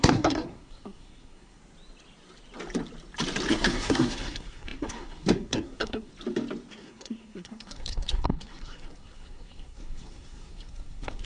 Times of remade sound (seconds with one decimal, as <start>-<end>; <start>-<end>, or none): 0.0-1.6; 3.5-6.1; 6.7-11.3